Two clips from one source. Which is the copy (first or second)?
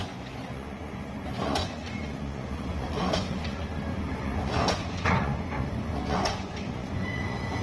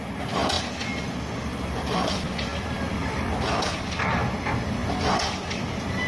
first